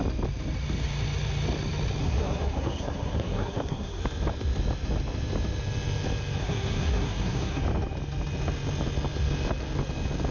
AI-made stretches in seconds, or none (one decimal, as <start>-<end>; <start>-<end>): 2.0-4.0; 6.4-7.6